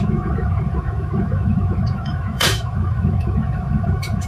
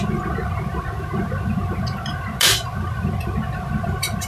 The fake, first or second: first